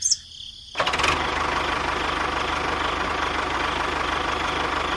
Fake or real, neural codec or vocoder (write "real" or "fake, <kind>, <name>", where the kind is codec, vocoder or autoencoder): real